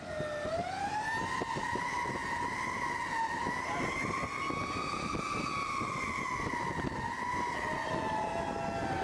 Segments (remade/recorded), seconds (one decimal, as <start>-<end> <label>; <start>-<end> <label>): 0.0-9.0 recorded